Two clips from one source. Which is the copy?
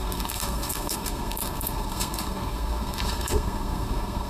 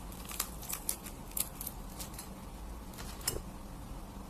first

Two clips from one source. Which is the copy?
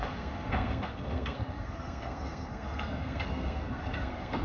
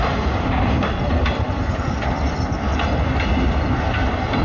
first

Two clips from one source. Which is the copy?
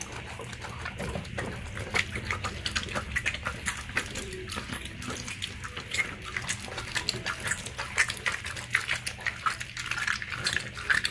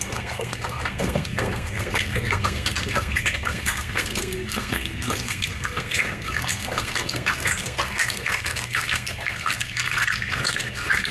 second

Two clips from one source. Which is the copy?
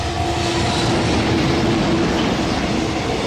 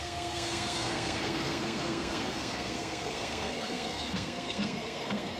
second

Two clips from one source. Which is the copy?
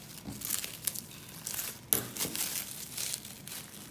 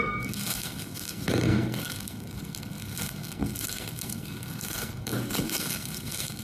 second